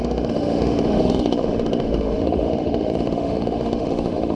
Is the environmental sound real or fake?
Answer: fake